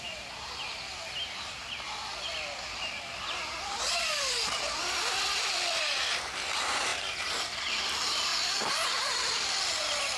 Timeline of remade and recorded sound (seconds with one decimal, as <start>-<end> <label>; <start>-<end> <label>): 0.0-8.3 remade; 8.3-9.6 recorded; 9.6-10.2 remade